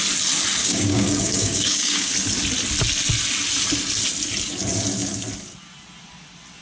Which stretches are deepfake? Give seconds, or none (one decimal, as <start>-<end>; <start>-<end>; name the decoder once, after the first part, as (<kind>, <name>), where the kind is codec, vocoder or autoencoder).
0.6-2.1 (codec, DAC)